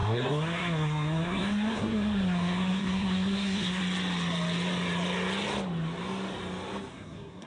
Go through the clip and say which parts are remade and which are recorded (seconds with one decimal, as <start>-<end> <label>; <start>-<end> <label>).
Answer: 0.0-3.8 remade; 3.8-6.9 recorded; 6.9-7.5 remade